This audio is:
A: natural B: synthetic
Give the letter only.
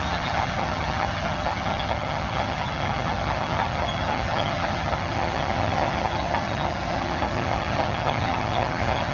B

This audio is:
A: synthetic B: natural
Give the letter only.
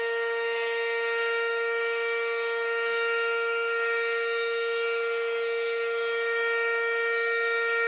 A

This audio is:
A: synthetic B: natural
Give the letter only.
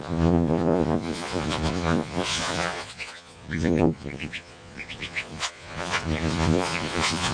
A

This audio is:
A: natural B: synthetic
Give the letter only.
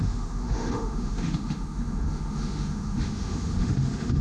B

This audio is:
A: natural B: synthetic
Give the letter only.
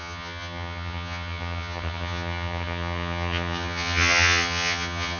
B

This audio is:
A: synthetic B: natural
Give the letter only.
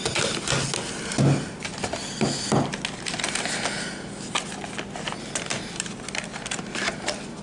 B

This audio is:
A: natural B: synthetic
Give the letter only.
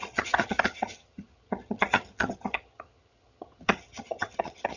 B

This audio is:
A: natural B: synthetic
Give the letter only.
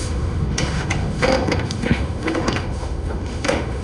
B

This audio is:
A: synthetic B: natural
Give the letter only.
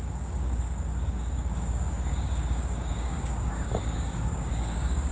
A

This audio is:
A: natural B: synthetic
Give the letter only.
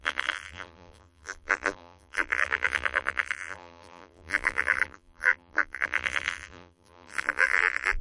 B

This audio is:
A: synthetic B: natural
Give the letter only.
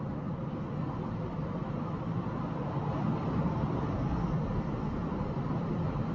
B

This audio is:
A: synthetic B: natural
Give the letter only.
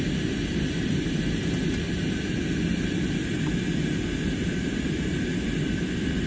B